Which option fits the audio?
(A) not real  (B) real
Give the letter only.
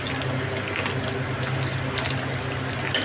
B